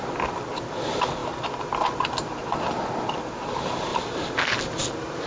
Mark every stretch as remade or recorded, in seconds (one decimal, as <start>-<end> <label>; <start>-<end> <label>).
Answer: 0.0-3.9 recorded; 3.9-5.3 remade